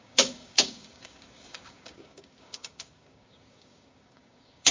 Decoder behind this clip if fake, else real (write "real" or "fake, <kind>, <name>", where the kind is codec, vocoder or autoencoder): fake, codec, DAC